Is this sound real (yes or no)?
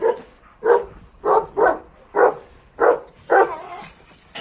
yes